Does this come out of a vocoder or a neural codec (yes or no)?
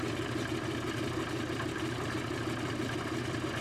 no